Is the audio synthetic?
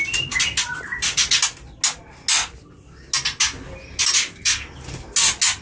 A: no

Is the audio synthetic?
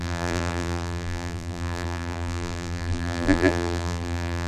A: yes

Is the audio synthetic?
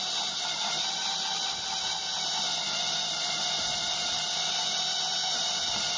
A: no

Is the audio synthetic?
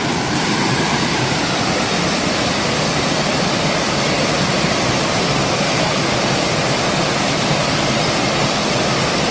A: yes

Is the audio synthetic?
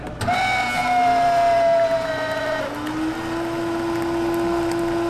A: no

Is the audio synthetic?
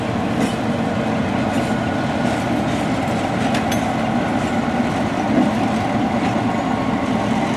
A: no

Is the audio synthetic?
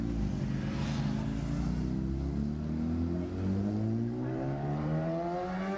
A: no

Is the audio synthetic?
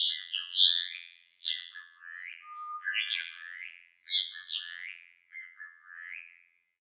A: yes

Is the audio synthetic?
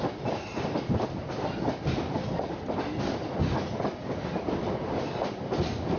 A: yes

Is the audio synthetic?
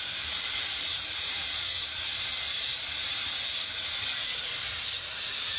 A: yes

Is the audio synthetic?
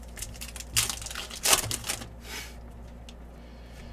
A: no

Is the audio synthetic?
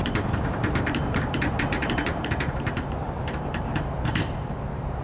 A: yes